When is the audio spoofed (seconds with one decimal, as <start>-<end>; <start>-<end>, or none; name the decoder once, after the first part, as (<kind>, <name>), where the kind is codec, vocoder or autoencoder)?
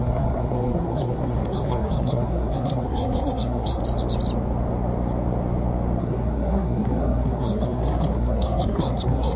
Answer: 0.0-3.8 (codec, SNAC); 6.0-9.4